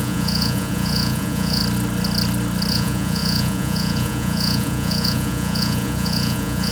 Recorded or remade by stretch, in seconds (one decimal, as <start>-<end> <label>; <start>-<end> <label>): 0.0-1.6 remade; 1.6-2.7 recorded; 2.7-6.7 remade